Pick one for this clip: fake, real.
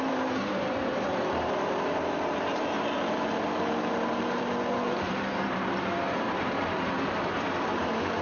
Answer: fake